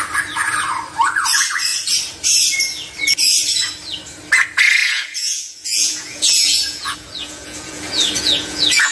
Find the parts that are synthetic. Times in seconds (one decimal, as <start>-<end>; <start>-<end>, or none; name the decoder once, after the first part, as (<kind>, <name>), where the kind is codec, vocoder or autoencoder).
4.8-8.9 (vocoder, Vocos)